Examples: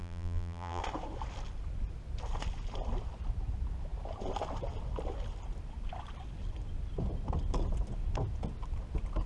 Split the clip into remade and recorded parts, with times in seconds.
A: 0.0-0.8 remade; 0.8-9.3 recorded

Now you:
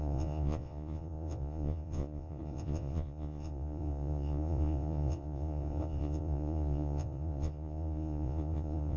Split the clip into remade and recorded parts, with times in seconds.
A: 0.0-9.0 remade

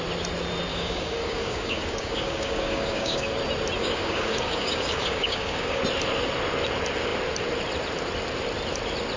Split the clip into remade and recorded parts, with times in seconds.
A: 0.0-0.7 recorded; 0.7-3.3 remade; 3.3-3.8 recorded; 3.8-5.8 remade; 5.8-9.2 recorded

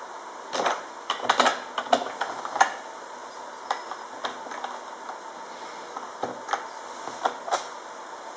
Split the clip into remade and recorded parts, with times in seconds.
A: 0.0-8.4 recorded

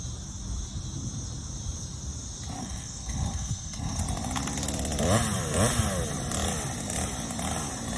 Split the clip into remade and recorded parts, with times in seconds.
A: 0.0-2.6 recorded; 2.6-4.0 remade; 4.0-8.0 recorded

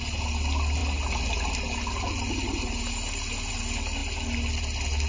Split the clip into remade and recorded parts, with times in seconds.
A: 0.0-5.1 recorded